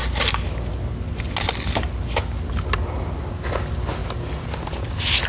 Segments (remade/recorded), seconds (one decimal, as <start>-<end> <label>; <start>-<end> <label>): 0.0-5.3 recorded